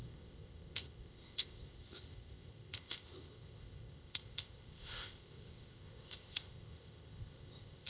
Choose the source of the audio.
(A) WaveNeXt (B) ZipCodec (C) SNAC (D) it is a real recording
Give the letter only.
B